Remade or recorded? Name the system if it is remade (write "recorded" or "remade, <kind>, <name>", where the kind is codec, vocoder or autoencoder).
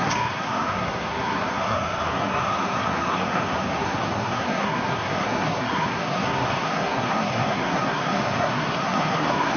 remade, codec, SNAC